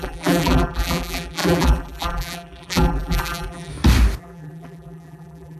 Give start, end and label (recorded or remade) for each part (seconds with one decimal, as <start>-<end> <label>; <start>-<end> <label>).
0.0-3.7 remade; 3.7-4.2 recorded; 4.2-5.6 remade

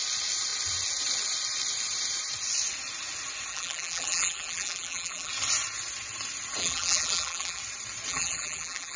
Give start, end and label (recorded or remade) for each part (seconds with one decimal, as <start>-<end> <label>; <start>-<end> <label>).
0.0-3.5 recorded; 3.5-5.3 remade; 5.3-6.6 recorded; 6.6-7.6 remade; 7.6-8.1 recorded; 8.1-9.0 remade

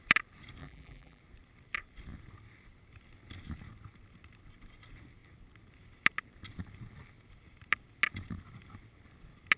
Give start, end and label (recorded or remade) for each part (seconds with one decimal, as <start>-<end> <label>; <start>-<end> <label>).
0.0-0.6 recorded; 0.6-1.2 remade; 1.2-9.6 recorded

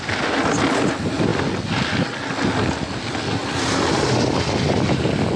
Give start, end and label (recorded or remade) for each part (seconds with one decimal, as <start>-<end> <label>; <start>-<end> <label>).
0.0-5.4 recorded

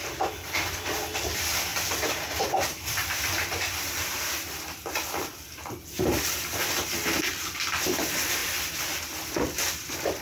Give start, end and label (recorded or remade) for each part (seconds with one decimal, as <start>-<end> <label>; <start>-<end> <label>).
0.0-1.7 recorded; 1.7-3.9 remade; 3.9-10.2 recorded

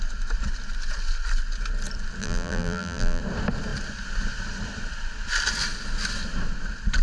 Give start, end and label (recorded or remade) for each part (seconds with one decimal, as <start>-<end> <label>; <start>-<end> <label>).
0.0-2.2 recorded; 2.2-3.2 remade; 3.2-7.0 recorded

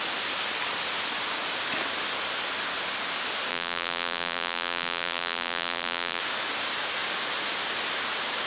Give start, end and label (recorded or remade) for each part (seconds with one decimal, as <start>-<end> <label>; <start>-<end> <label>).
0.0-3.5 recorded; 3.5-6.2 remade; 6.2-8.5 recorded

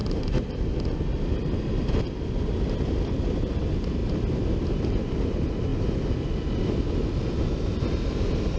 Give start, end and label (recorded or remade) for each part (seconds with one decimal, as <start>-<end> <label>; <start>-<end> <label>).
0.0-8.6 recorded